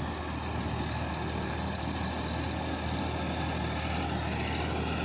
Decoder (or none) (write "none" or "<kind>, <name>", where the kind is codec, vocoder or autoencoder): none